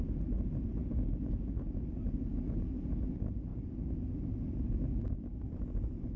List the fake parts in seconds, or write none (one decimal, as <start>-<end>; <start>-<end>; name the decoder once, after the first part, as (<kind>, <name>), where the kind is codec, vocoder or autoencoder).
none